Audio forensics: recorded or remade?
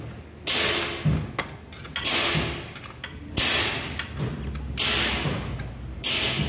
recorded